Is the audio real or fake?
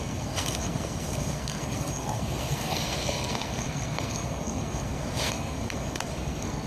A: fake